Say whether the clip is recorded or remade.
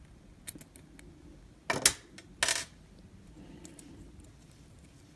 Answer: recorded